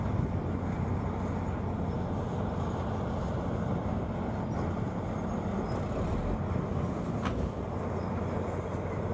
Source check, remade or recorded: recorded